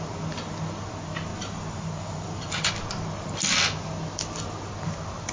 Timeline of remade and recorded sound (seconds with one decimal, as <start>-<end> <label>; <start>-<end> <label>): 0.0-1.3 recorded; 1.3-2.7 remade; 2.7-5.3 recorded